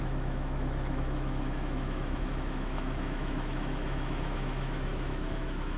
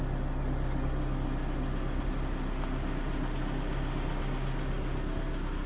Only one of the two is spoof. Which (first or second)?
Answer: first